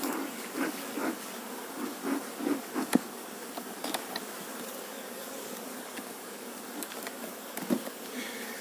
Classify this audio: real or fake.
fake